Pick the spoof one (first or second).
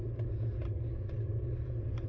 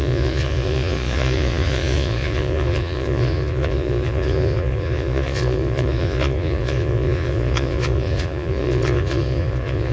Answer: second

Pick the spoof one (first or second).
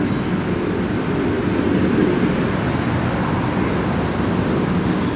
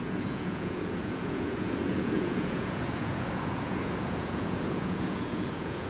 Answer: second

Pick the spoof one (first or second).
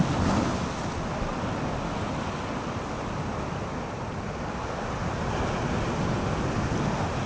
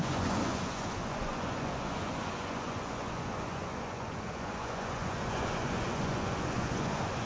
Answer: second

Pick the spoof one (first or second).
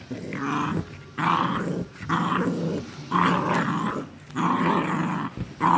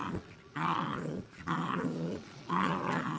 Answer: second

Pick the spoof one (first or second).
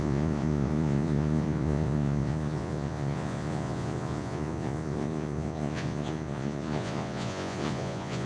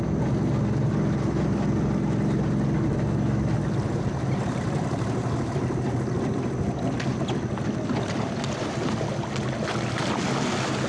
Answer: first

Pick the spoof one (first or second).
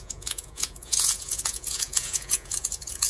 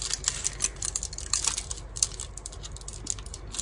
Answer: first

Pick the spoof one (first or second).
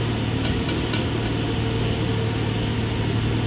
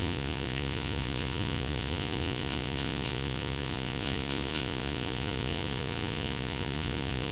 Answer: second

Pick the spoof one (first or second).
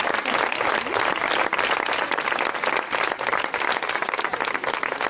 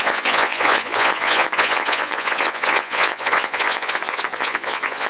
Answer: second